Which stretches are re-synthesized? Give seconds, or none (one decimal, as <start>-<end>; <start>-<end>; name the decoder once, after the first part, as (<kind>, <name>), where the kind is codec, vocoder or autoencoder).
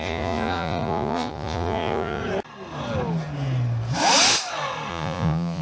0.0-2.2 (vocoder, Vocos); 4.9-5.6